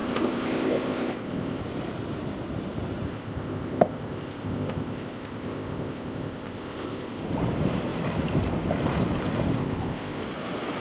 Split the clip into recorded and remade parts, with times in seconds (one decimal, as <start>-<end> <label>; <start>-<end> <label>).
0.0-1.6 remade; 1.6-3.1 recorded; 3.1-7.2 remade; 7.2-9.6 recorded; 9.6-10.2 remade; 10.2-10.8 recorded